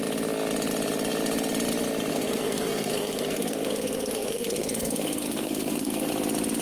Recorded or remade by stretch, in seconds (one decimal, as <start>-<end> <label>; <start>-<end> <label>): 0.0-2.1 recorded; 2.1-6.1 remade; 6.1-6.6 recorded

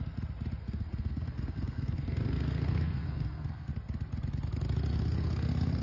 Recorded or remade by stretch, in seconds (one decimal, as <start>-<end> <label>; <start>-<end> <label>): 0.0-0.6 recorded; 0.6-3.7 remade; 3.7-4.9 recorded; 4.9-5.8 remade

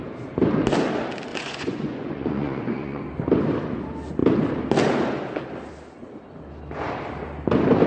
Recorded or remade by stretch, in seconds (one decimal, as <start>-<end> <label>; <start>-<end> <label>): 0.0-1.3 recorded; 1.3-3.0 remade; 3.0-7.9 recorded

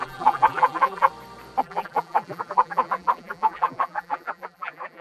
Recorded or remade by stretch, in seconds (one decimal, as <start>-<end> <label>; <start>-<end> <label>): 0.0-1.1 remade; 1.1-1.6 recorded; 1.6-5.0 remade

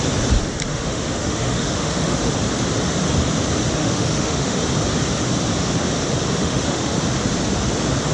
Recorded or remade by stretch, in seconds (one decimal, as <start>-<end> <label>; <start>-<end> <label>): 0.0-0.7 recorded; 0.7-2.3 remade; 2.3-3.8 recorded; 3.8-4.6 remade; 4.6-6.4 recorded; 6.4-7.0 remade; 7.0-8.1 recorded

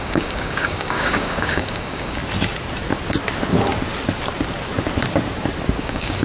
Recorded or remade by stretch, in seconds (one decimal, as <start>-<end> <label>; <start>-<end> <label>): 0.0-2.2 remade; 2.2-5.8 recorded; 5.8-6.2 remade

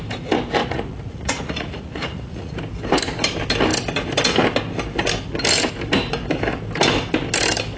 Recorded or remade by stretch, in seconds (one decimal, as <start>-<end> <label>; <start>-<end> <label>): 0.0-0.6 recorded; 0.6-2.6 remade; 2.6-7.8 recorded

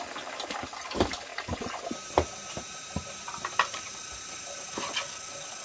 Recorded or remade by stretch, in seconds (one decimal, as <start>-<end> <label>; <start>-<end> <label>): 0.0-1.3 recorded; 1.3-4.7 remade; 4.7-5.6 recorded